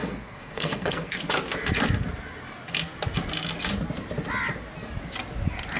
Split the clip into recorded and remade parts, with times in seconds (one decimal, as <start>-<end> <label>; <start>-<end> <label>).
0.0-1.2 remade; 1.2-5.8 recorded